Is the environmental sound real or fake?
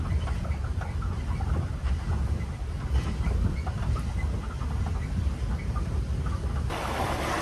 real